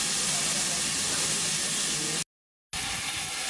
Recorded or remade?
recorded